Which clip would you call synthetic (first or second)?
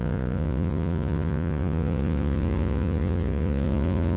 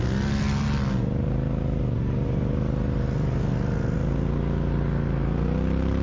first